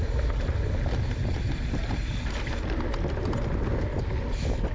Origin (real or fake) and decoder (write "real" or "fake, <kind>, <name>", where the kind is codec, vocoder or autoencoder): real